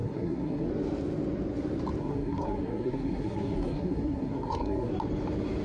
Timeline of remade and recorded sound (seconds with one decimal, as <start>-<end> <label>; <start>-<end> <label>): 0.0-0.7 remade; 0.7-2.0 recorded; 2.0-4.9 remade; 4.9-5.6 recorded